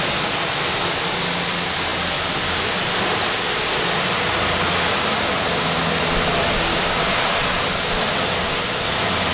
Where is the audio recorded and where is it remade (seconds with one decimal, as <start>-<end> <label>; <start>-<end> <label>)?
0.0-6.7 recorded; 6.7-7.2 remade; 7.2-9.3 recorded